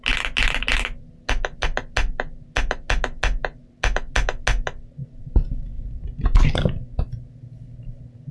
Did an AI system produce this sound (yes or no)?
no